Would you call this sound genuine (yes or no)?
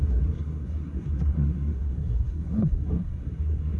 no